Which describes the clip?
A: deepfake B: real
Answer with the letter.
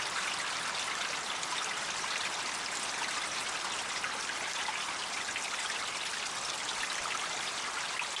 B